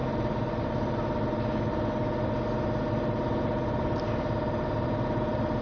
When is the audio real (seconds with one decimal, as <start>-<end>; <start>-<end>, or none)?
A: 0.0-5.6